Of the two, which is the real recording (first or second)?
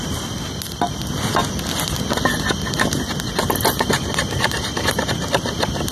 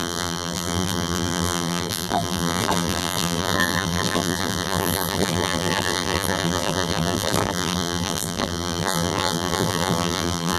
first